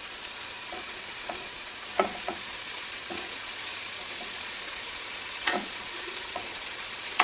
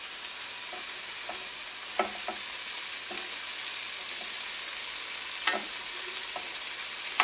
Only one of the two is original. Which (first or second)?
second